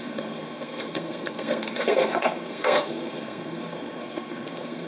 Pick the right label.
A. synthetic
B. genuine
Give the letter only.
A